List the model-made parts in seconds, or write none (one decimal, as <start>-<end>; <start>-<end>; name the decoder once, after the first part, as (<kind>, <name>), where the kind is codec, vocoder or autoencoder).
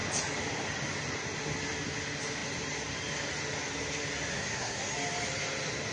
4.3-4.9 (codec, SNAC)